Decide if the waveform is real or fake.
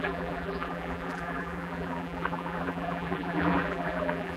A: fake